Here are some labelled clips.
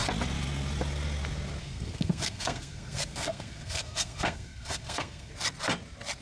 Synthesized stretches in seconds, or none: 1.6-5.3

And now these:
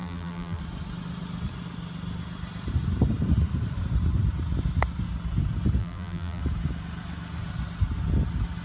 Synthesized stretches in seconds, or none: 0.0-0.6; 5.8-6.4

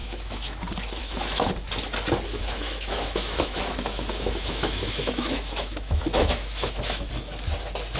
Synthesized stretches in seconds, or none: 0.0-0.6; 1.0-1.5; 2.4-7.1

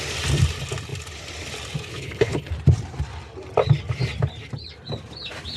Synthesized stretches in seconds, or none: 1.9-2.5

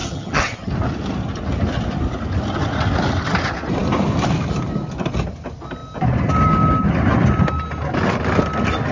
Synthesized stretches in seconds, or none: 0.0-0.7

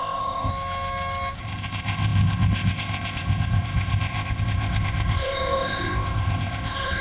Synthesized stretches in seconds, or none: 0.0-0.5; 1.4-7.0

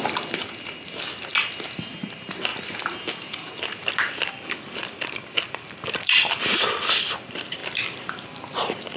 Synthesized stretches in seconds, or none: 0.0-1.3; 1.9-9.0